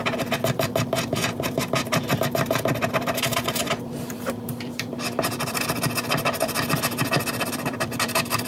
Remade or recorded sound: remade